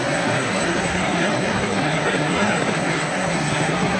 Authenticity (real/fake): fake